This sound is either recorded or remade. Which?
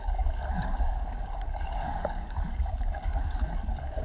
remade